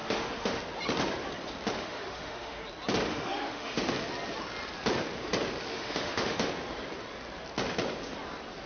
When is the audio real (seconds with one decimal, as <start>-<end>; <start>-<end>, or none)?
0.6-1.8; 2.6-3.1; 3.9-5.7; 6.5-8.7